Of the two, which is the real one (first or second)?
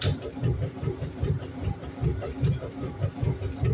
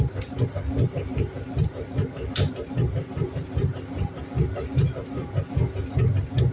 second